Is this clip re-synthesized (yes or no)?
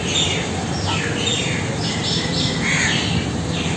no